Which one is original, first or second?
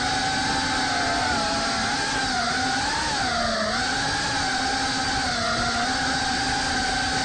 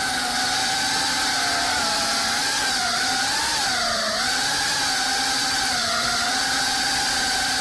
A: first